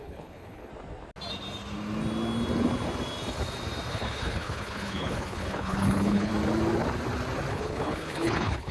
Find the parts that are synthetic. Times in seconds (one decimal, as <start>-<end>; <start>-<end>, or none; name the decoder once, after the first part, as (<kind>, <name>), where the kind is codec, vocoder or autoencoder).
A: 0.0-0.7 (codec, HILCodec); 3.9-6.3; 7.5-8.7